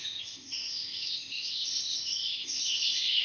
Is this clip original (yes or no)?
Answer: no